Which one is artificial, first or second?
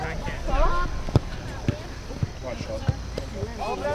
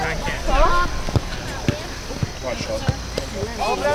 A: first